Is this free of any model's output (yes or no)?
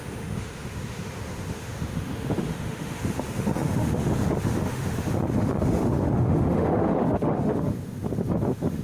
no